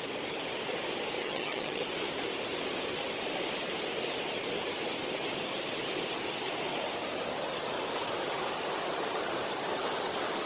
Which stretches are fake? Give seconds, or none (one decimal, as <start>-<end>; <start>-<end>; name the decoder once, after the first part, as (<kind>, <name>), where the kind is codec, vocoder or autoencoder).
1.2-1.8 (vocoder, HiFi-GAN)